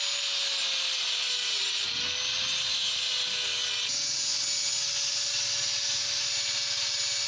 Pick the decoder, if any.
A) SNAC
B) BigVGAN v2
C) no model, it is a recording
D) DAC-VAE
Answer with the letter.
C